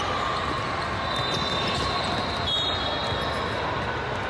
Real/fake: real